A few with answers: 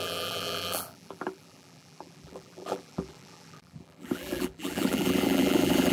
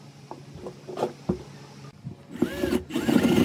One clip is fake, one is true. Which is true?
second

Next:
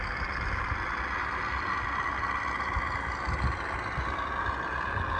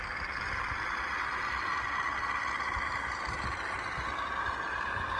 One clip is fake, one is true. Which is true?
first